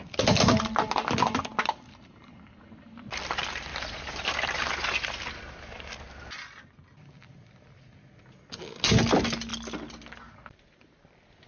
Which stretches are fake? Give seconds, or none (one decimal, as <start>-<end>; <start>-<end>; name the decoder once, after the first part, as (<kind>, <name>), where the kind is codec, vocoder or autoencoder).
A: 3.7-4.7 (vocoder, BigVGAN v2)

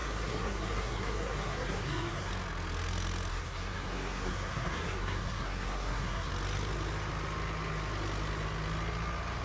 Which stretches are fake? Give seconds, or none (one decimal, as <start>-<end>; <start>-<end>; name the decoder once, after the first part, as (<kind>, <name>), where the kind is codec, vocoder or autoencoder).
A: 0.0-2.3 (codec, SNAC); 3.3-6.3